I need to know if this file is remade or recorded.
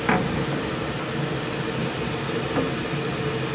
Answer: recorded